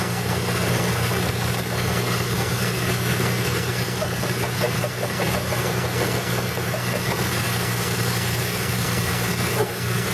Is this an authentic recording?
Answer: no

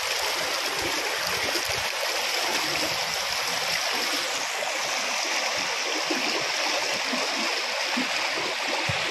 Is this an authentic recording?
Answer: yes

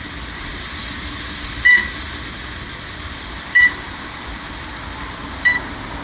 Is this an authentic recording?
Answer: yes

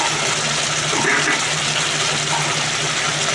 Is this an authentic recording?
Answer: yes